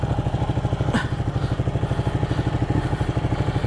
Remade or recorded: recorded